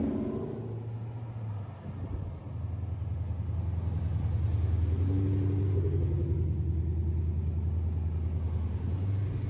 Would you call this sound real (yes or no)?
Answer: yes